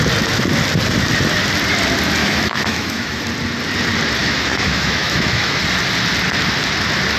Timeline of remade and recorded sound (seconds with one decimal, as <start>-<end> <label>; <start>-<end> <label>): 0.0-2.2 recorded; 2.2-3.2 remade; 3.2-4.2 recorded; 4.2-5.6 remade; 5.6-7.2 recorded